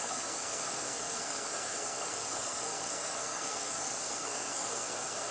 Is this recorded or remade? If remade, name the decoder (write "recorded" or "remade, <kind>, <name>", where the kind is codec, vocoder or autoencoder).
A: remade, codec, SNAC